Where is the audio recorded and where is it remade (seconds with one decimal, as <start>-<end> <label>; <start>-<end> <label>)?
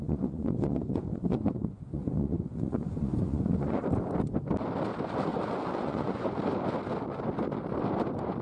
0.0-3.8 remade; 3.8-5.3 recorded; 5.3-6.4 remade; 6.4-8.4 recorded